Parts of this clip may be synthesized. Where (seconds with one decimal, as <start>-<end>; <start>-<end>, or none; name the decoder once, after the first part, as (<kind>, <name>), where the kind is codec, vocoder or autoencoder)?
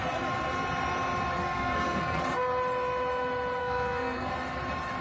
1.4-2.2 (codec, SNAC); 3.6-4.3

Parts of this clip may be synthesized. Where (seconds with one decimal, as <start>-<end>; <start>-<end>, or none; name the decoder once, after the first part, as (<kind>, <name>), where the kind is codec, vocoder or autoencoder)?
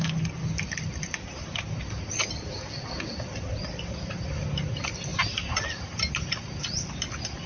none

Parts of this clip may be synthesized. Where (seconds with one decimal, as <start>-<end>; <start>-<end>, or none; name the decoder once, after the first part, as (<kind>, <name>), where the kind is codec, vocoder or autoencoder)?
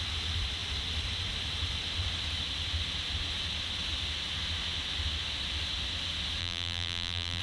6.4-7.4 (vocoder, BigVGAN v2)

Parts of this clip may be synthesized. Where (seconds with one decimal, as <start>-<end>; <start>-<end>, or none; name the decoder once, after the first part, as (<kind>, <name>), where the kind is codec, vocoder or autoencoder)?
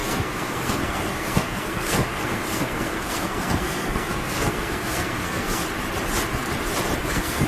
0.0-5.6 (codec, SNAC); 7.0-7.5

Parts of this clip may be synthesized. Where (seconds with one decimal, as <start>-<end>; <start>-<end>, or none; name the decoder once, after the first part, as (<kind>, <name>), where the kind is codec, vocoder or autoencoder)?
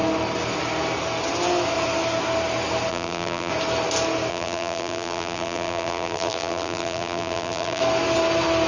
2.9-3.5 (vocoder, BigVGAN v2); 4.3-7.8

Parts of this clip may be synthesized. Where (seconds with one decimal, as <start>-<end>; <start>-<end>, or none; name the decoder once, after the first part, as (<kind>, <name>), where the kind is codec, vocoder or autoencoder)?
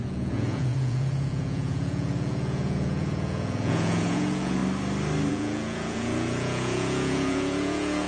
0.0-4.6 (vocoder, Vocos); 5.3-8.1